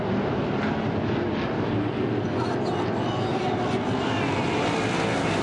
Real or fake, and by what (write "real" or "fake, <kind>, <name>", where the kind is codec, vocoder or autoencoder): real